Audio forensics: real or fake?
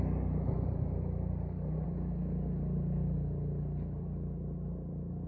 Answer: real